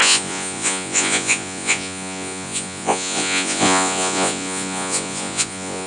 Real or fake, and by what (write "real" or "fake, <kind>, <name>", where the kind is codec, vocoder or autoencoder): fake, vocoder, Vocos